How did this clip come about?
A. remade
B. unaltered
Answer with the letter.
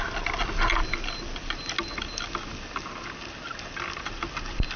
B